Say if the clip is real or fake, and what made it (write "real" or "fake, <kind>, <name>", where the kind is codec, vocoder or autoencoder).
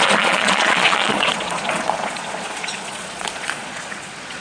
fake, vocoder, Vocos